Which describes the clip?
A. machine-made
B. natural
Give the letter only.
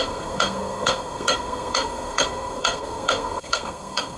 A